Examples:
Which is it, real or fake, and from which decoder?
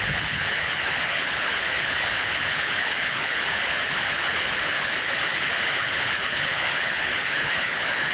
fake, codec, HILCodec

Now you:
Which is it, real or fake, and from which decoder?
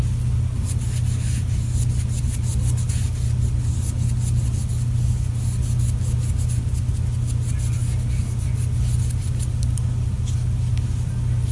real